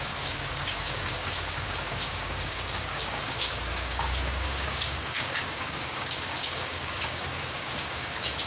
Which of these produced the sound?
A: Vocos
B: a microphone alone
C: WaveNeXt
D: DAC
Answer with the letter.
D